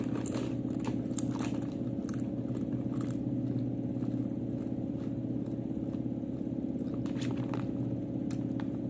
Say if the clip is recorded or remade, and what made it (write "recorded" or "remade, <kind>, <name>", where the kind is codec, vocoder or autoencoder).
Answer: recorded